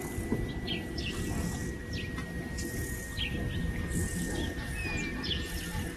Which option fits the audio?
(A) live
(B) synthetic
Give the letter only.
A